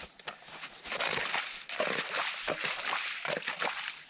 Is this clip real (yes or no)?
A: yes